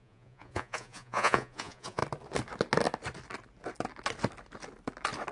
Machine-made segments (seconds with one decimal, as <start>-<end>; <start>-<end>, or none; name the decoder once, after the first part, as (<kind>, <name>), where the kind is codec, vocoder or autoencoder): 0.0-2.0 (vocoder, Vocos)